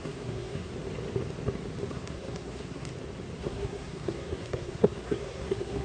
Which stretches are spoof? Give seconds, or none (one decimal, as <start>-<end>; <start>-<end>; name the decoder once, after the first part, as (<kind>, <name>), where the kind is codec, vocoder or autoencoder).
0.0-0.7 (codec, SNAC); 1.9-2.9; 3.4-5.8